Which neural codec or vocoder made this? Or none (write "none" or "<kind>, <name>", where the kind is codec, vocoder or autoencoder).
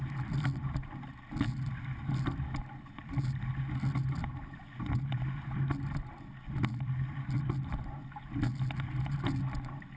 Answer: none